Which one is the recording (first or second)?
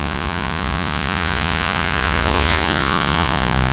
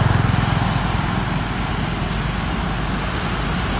second